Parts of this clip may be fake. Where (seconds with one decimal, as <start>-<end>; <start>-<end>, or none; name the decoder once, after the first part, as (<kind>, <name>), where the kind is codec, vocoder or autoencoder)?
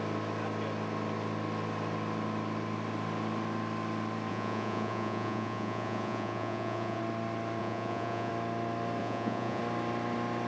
4.3-7.0 (vocoder, Vocos); 7.6-8.3; 9.0-9.6